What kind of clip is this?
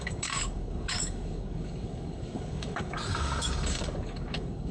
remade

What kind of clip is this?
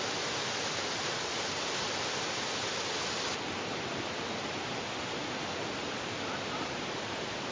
recorded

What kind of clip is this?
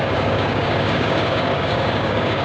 remade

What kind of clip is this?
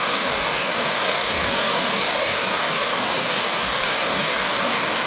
remade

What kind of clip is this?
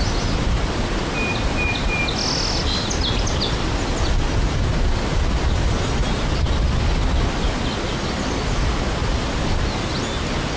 recorded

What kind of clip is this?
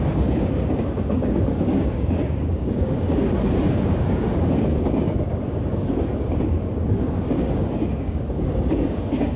remade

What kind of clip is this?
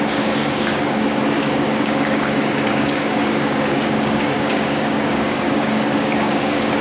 remade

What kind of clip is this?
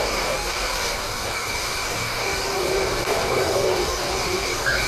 remade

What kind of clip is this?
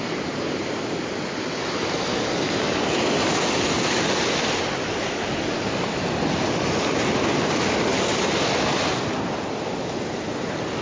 recorded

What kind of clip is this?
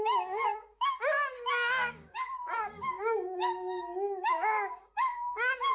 remade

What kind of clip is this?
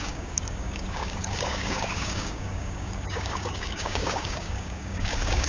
remade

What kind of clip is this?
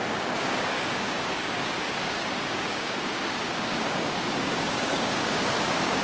remade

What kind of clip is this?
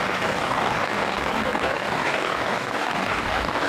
remade